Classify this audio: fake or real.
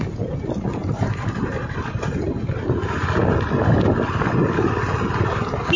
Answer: real